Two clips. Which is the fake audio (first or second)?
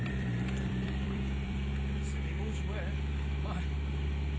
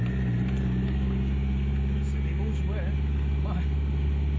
first